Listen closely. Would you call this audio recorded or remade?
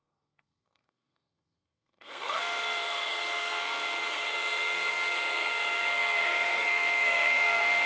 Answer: remade